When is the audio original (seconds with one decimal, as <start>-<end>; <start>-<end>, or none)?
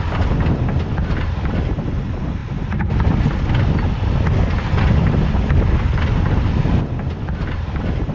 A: 0.0-8.1